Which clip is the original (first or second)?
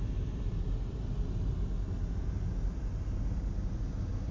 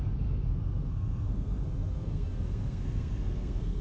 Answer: first